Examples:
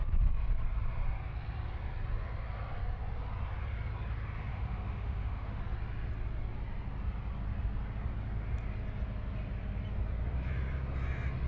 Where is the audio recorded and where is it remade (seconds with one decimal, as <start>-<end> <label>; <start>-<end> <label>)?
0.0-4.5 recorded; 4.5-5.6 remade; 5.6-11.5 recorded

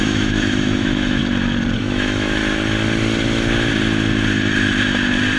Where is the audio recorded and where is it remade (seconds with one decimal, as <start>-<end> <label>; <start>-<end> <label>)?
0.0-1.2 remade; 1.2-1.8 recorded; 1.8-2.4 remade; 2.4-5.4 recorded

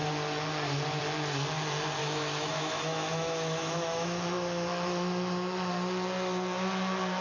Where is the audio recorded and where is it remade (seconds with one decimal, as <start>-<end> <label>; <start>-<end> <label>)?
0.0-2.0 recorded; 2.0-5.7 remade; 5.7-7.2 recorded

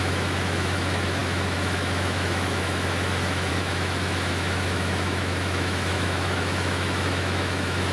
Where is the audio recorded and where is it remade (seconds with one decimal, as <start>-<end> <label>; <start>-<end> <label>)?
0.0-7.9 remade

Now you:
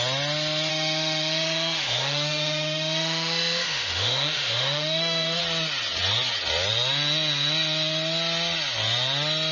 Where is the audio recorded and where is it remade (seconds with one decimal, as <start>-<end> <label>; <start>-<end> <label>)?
0.0-0.7 recorded; 0.7-5.4 remade; 5.4-9.5 recorded

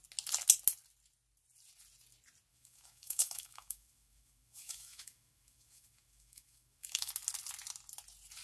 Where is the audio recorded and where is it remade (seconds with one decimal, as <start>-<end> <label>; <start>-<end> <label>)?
0.0-2.5 recorded; 2.5-7.1 remade; 7.1-8.4 recorded